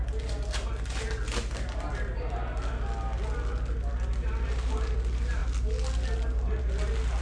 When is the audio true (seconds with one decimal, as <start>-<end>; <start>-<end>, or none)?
0.0-7.2